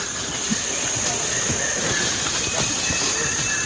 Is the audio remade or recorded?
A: recorded